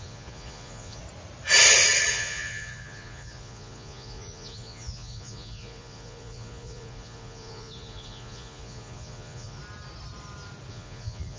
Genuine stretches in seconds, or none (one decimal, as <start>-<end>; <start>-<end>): 1.0-2.1; 9.6-10.7

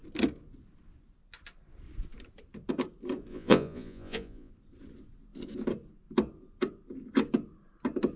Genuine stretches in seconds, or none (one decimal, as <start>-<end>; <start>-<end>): 0.0-3.3; 4.5-8.2

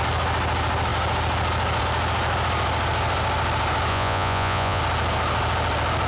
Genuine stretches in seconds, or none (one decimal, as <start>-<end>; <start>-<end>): 0.0-3.9; 4.8-6.1

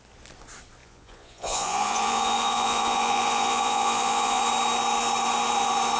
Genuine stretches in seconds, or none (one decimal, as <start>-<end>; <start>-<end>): 0.0-0.8; 4.4-6.0